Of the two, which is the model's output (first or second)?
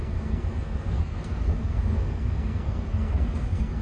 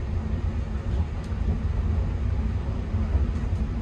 first